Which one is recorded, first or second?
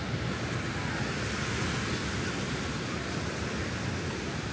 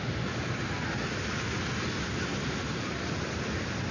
first